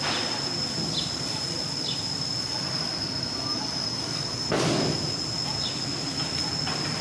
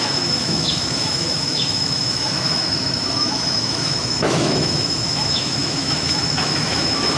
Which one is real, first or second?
first